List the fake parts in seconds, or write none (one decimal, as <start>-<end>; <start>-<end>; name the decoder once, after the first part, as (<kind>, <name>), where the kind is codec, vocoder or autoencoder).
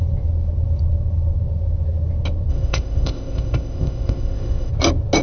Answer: 2.5-4.7 (codec, ZipCodec)